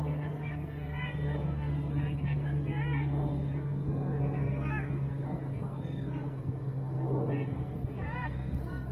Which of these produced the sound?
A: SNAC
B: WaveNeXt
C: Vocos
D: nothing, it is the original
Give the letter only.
A